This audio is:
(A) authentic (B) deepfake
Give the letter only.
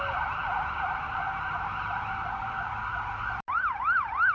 B